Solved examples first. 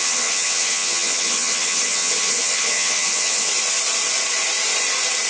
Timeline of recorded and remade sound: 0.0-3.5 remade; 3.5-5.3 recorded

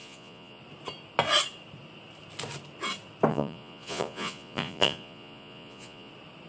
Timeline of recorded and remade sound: 0.0-0.6 remade; 0.6-3.3 recorded; 3.3-6.1 remade; 6.1-6.5 recorded